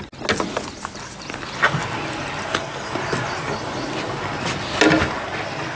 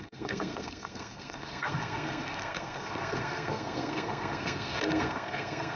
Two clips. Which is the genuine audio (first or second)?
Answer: first